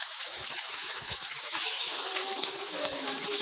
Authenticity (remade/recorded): remade